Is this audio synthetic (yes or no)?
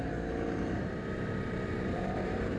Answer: yes